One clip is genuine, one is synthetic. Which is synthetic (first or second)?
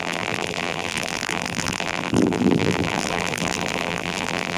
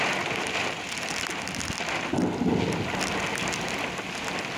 first